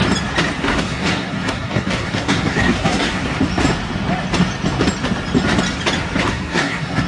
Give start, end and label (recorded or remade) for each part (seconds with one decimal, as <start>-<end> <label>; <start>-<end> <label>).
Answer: 0.0-0.6 recorded; 0.6-3.3 remade; 3.3-6.2 recorded; 6.2-7.1 remade